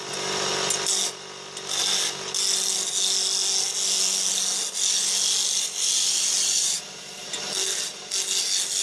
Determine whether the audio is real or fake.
real